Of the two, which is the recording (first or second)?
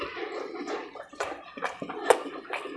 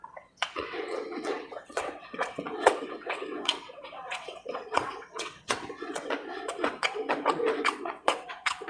first